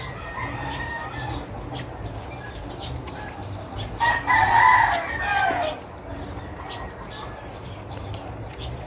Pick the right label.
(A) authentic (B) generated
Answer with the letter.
A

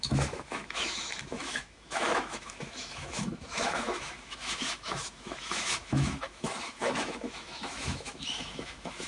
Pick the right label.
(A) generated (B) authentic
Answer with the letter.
A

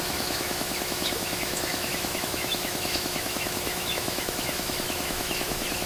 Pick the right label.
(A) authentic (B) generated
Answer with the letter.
B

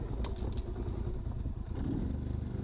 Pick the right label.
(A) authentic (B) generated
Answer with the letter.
A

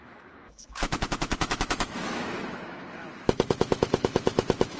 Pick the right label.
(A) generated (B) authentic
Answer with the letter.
A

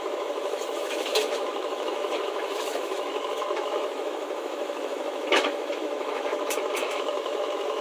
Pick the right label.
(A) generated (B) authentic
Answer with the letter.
A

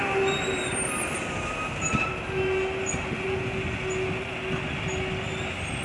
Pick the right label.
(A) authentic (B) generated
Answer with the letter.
A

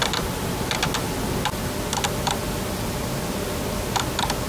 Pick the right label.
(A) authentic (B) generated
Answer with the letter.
A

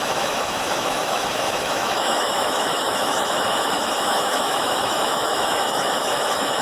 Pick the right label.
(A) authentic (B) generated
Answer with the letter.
B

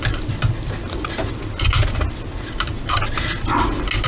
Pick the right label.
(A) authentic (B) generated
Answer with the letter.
A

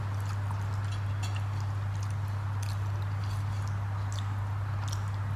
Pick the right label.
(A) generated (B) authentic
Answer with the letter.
B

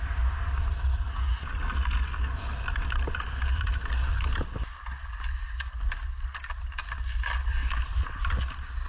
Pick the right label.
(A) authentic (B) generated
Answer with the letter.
A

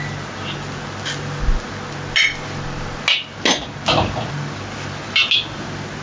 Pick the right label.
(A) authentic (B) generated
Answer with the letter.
A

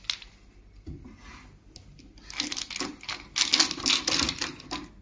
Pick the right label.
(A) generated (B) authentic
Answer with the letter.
B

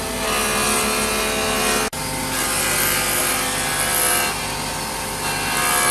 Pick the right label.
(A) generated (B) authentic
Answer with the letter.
B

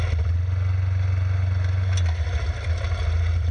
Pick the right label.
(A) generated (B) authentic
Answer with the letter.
B